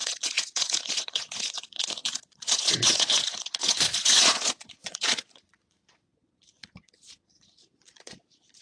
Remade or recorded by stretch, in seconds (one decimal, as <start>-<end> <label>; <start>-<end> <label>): 0.0-8.6 remade